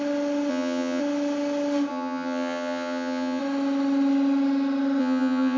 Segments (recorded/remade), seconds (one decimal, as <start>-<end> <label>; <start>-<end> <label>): 0.0-0.5 recorded; 0.5-1.0 remade; 1.0-1.9 recorded; 1.9-3.4 remade; 3.4-5.0 recorded; 5.0-5.6 remade